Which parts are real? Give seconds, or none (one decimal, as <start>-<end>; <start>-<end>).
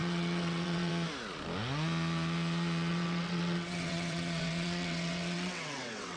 0.9-2.9